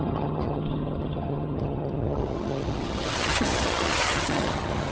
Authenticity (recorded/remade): remade